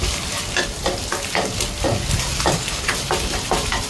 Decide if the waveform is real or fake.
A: real